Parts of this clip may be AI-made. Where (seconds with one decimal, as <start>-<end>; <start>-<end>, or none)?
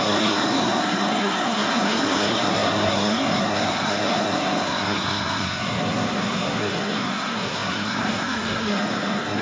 0.0-9.4